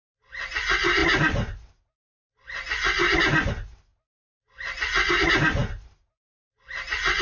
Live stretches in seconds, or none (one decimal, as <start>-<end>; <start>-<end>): 0.0-7.2